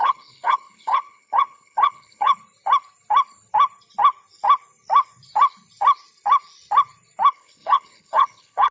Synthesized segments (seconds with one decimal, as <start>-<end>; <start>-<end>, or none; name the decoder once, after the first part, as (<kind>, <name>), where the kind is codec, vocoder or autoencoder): 0.0-2.3 (codec, HILCodec); 7.3-8.7